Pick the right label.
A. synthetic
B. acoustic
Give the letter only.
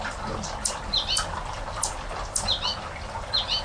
B